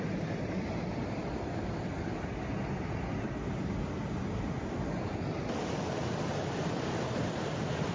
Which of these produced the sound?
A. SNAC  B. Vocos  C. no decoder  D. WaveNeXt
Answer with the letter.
C